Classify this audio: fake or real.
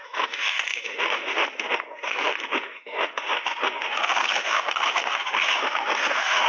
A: fake